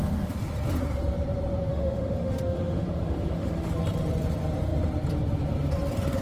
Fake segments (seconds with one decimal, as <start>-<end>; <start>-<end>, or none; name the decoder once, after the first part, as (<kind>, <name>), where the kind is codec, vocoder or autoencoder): 1.7-3.7 (autoencoder, DAC-VAE)